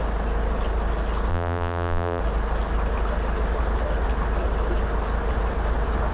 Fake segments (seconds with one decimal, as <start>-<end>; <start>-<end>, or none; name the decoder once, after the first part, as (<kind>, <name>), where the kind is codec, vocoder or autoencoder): 1.3-2.2 (vocoder, BigVGAN v2)